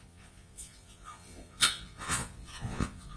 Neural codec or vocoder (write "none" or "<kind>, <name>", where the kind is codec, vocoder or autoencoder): vocoder, Vocos